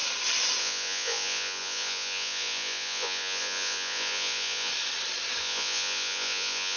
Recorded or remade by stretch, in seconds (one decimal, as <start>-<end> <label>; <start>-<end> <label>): 0.0-0.6 recorded; 0.6-4.7 remade; 4.7-5.4 recorded; 5.4-6.8 remade